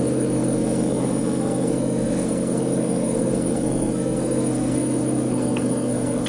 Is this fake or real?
fake